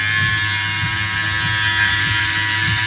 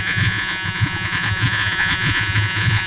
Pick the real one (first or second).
first